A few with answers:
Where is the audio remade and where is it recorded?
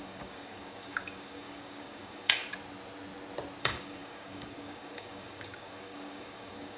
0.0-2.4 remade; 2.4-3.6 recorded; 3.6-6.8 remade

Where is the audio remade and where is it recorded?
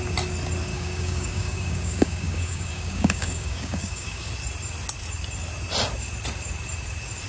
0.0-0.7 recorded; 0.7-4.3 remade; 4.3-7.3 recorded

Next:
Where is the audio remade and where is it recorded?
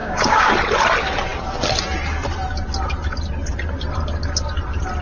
0.0-0.5 remade; 0.5-5.0 recorded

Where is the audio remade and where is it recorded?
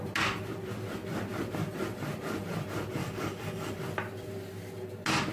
0.0-3.0 recorded; 3.0-3.7 remade; 3.7-5.3 recorded